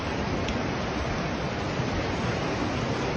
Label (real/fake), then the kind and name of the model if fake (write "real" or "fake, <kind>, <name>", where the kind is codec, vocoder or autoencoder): real